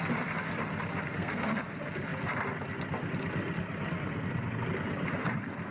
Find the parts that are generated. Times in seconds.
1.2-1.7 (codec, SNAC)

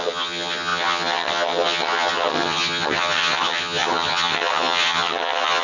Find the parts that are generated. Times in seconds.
0.0-5.6 (vocoder, HiFi-GAN)

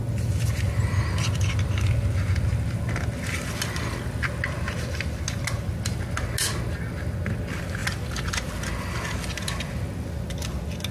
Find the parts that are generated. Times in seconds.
none

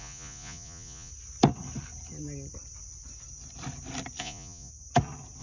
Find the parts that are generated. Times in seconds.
0.0-1.1 (vocoder, Vocos); 4.2-4.7

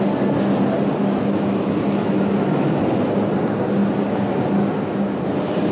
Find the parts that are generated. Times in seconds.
1.0-2.1 (autoencoder, DAC-VAE)